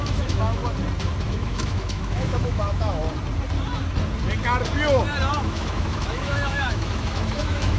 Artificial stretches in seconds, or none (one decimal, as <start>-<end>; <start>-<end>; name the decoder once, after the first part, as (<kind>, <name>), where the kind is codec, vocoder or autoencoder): 0.0-0.6 (autoencoder, DAC-VAE); 1.2-3.0; 5.4-7.8